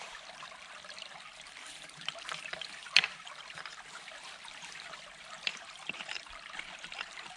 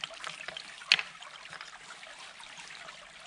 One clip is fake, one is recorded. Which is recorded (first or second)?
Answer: second